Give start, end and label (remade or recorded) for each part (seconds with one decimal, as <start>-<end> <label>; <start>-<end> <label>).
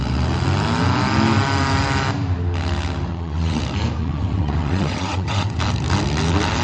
0.0-3.1 recorded; 3.1-3.6 remade; 3.6-4.0 recorded; 4.0-5.6 remade; 5.6-6.6 recorded